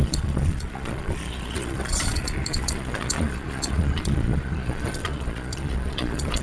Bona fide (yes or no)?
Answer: no